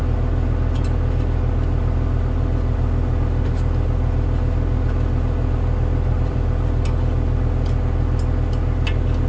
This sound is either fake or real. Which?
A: fake